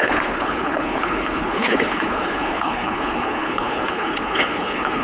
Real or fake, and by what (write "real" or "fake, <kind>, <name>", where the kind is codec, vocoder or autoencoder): fake, codec, HILCodec